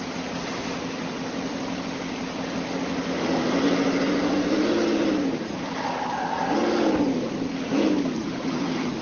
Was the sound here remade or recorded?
recorded